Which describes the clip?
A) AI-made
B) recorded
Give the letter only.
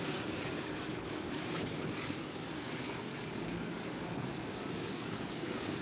A